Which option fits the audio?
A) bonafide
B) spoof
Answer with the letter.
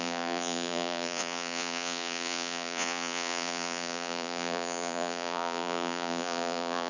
B